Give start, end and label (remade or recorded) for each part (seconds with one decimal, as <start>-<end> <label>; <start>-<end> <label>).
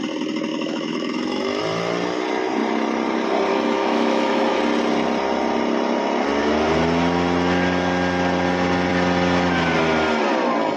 0.0-0.5 recorded; 0.5-1.6 remade; 1.6-3.5 recorded; 3.5-4.6 remade; 4.6-10.8 recorded